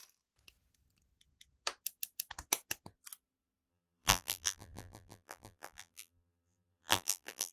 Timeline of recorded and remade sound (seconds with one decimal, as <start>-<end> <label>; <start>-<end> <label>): 0.0-3.7 recorded; 3.7-7.5 remade